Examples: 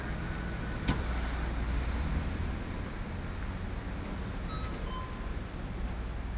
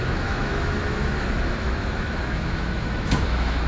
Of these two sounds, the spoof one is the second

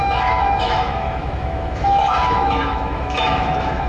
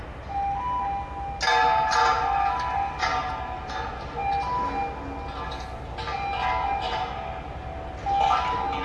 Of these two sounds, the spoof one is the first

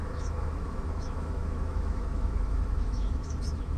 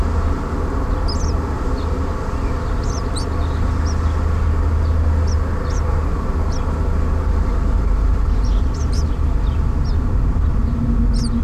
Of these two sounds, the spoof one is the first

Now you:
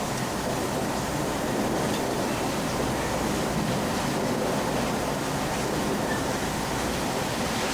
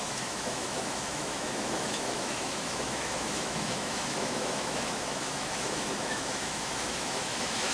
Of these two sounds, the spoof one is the second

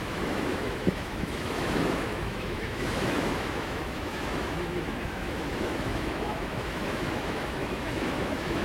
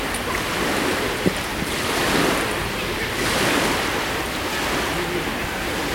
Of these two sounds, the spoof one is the first